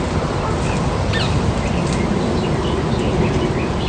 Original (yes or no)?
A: yes